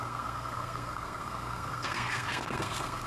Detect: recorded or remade remade